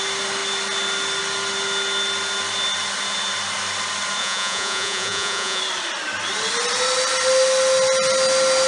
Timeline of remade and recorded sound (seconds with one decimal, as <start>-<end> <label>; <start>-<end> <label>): 0.0-4.2 recorded; 4.2-5.6 remade; 5.6-8.7 recorded